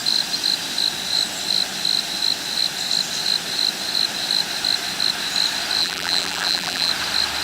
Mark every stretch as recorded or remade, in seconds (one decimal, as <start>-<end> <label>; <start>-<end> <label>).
0.0-5.8 recorded; 5.8-6.9 remade; 6.9-7.4 recorded